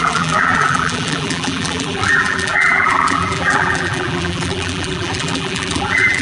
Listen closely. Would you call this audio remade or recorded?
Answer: remade